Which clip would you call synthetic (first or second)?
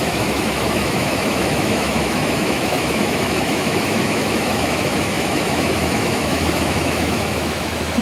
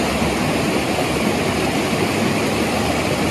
first